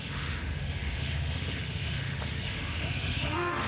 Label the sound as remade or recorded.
remade